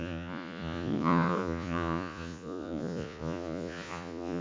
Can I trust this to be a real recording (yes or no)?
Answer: no